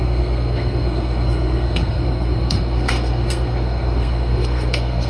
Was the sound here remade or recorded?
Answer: remade